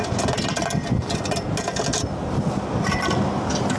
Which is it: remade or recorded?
recorded